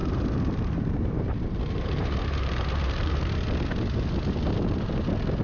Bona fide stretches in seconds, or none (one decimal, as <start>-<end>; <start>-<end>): 3.2-5.4